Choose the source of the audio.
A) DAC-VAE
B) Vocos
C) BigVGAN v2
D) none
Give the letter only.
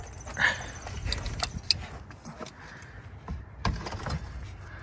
D